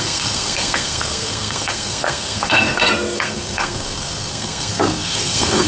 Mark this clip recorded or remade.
remade